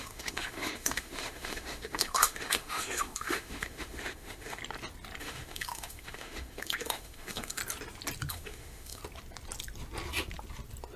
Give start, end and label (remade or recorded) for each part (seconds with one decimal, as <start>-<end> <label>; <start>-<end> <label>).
0.0-4.6 remade; 4.6-5.2 recorded; 5.2-7.6 remade; 7.6-8.3 recorded; 8.3-9.0 remade; 9.0-11.0 recorded